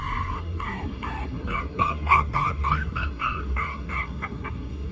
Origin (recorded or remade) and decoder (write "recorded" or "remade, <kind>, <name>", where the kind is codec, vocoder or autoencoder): remade, codec, SNAC